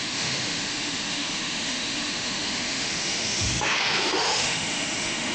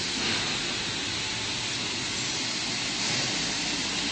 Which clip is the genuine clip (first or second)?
second